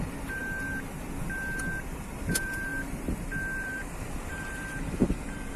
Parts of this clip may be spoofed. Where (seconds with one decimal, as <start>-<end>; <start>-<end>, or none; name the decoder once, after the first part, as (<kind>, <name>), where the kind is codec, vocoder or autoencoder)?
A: 0.0-0.4 (vocoder, BigVGAN v2); 2.2-5.6